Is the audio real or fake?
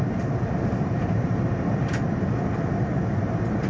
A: fake